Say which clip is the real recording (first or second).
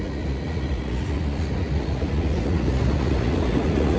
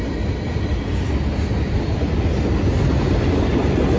second